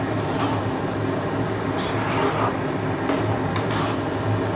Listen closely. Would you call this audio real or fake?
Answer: real